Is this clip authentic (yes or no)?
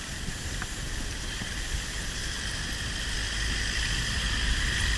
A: no